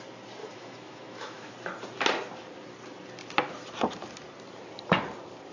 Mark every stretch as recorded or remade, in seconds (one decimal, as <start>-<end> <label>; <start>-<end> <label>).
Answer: 0.0-0.4 recorded; 0.4-1.5 remade; 1.5-5.5 recorded